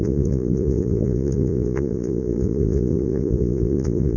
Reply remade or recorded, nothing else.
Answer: remade